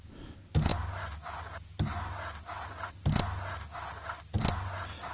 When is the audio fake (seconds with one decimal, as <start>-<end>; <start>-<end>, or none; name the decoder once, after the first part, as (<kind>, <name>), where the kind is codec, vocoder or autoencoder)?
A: none